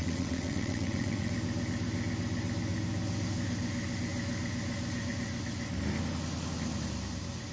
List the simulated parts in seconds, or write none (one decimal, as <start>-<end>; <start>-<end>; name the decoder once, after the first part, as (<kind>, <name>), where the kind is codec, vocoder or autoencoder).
0.0-1.3 (vocoder, WaveNeXt)